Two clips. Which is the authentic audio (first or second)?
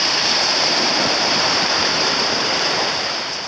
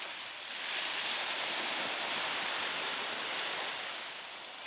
second